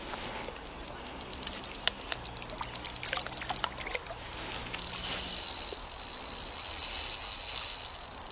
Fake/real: real